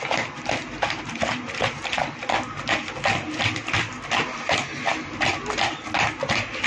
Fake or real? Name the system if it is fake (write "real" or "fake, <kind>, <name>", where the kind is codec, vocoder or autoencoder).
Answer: real